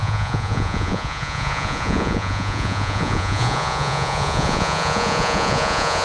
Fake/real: fake